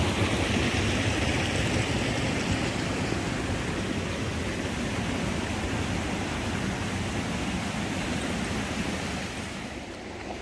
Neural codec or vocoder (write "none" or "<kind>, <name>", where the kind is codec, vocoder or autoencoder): none